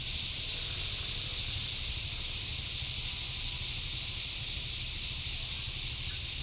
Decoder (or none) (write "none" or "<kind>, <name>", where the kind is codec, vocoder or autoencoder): none